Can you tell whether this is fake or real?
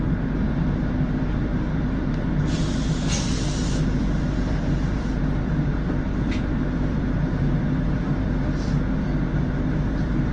fake